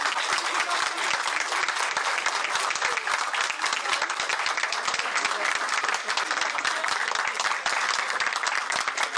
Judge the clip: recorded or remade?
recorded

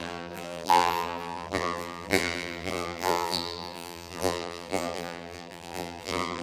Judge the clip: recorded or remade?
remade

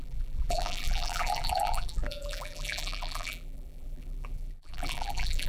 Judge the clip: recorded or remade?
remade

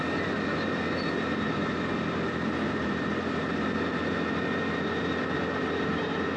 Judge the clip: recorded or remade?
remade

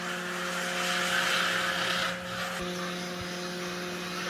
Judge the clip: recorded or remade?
recorded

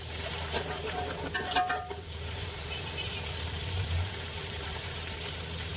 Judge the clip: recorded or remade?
remade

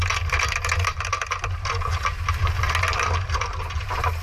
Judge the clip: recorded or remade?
recorded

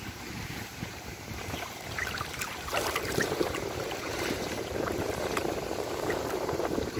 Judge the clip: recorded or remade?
remade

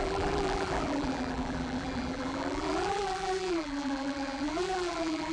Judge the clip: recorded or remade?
remade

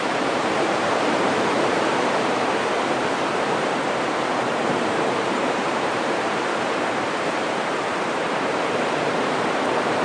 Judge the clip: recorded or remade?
remade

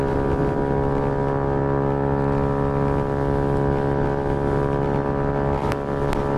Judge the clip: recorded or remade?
recorded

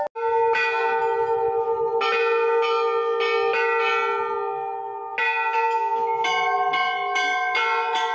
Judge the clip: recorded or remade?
recorded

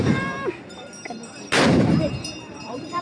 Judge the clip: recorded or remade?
remade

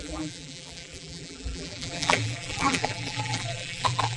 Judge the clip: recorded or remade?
remade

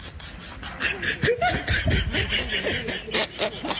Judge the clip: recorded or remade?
recorded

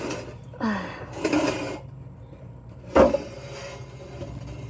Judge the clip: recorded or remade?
recorded